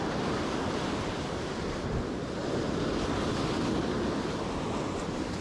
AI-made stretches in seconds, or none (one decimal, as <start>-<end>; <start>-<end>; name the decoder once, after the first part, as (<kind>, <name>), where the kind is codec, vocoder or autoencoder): 2.4-2.9 (vocoder, BigVGAN v2)